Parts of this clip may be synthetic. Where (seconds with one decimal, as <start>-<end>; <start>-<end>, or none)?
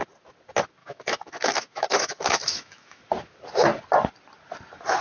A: 0.8-3.0